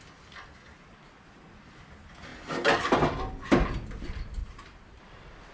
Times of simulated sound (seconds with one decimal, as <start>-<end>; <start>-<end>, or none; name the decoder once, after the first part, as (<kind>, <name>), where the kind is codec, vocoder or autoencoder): 4.4-5.0 (vocoder, BigVGAN v2)